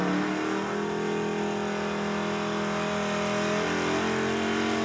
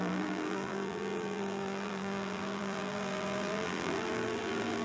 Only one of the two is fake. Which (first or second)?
second